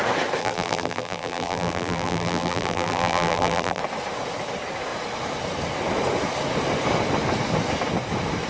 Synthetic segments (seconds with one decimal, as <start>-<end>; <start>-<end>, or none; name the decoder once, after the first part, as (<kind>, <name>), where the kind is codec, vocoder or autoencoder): 0.4-3.8 (vocoder, BigVGAN v2)